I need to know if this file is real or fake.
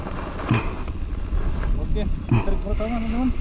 real